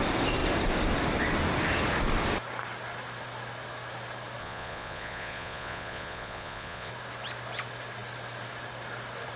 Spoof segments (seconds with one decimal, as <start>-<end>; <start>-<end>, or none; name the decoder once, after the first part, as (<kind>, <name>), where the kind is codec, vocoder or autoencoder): 4.4-6.9 (vocoder, Vocos)